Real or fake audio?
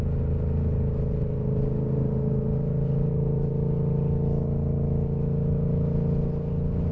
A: real